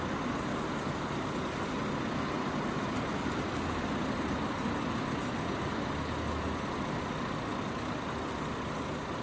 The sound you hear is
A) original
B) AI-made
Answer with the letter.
A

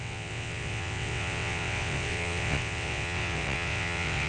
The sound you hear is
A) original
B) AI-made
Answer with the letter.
B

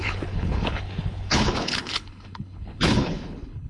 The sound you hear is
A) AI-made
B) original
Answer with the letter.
A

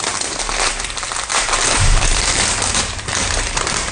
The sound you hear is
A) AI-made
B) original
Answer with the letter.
A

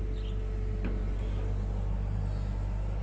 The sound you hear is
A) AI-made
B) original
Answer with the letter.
B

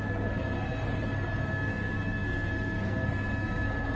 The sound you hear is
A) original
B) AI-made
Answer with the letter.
B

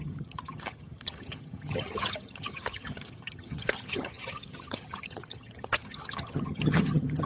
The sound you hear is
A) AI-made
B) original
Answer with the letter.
A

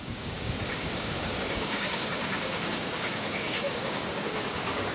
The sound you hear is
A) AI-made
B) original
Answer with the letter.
A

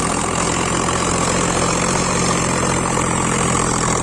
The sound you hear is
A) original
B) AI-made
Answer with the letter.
A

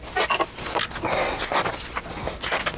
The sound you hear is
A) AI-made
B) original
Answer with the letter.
B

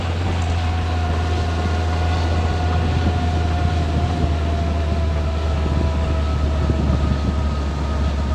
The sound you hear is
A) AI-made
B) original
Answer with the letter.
B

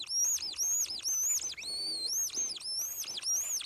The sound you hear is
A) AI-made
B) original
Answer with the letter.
B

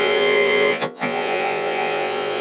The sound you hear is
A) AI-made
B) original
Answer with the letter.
A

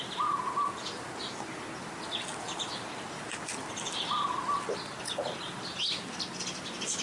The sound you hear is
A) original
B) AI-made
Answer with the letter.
A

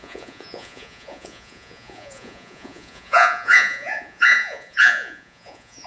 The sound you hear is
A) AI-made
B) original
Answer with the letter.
A